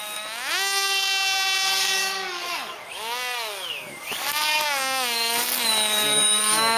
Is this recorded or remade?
remade